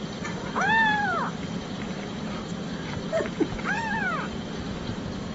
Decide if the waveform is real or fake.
fake